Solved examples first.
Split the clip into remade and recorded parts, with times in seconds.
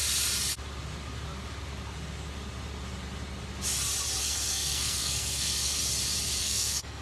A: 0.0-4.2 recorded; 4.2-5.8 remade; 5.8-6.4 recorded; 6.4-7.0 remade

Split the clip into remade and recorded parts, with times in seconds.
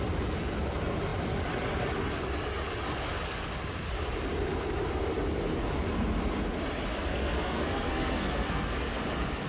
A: 0.0-7.0 recorded; 7.0-9.0 remade; 9.0-9.5 recorded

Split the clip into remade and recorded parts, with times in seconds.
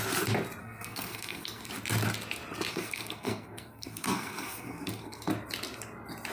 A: 0.0-0.6 recorded; 0.6-1.7 remade; 1.7-2.7 recorded; 2.7-5.3 remade; 5.3-6.3 recorded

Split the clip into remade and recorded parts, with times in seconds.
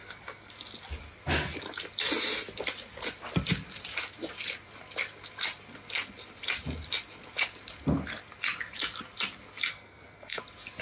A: 0.0-0.5 remade; 0.5-9.7 recorded; 9.7-10.4 remade; 10.4-10.8 recorded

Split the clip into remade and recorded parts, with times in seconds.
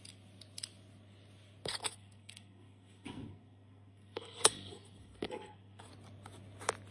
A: 0.0-1.8 recorded; 1.8-5.9 remade; 5.9-6.9 recorded